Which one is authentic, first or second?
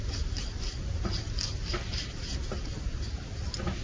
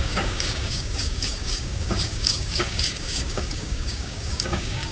first